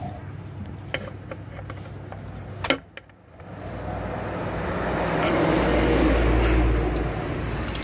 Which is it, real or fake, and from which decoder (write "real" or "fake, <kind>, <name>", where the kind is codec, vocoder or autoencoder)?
real